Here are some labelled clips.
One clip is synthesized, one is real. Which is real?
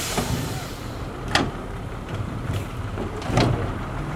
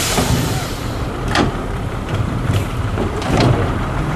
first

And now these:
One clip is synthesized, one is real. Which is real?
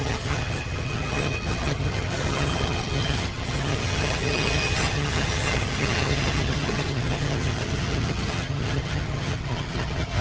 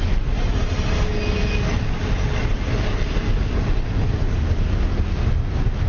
second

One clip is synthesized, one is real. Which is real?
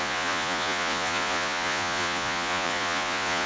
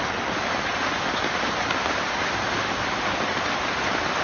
second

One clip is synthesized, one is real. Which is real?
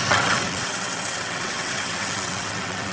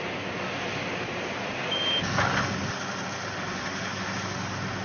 second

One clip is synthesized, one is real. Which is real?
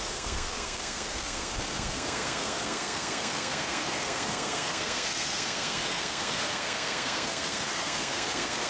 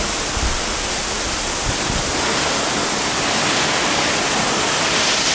second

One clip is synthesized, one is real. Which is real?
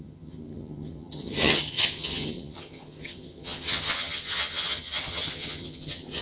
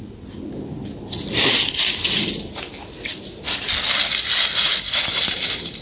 second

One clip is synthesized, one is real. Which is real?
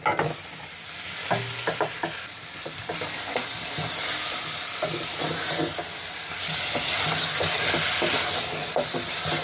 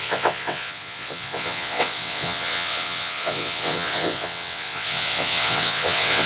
first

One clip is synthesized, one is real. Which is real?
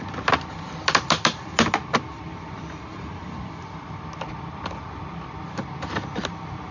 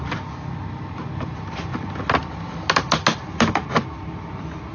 second